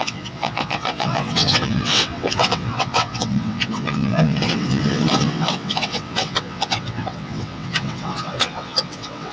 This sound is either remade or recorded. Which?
remade